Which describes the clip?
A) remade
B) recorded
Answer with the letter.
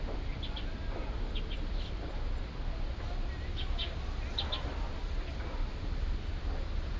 B